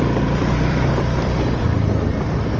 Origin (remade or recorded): remade